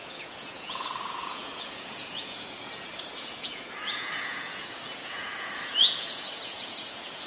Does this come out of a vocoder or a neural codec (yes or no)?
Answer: yes